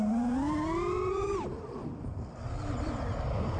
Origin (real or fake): real